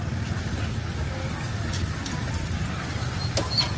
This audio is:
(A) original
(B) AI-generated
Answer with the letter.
A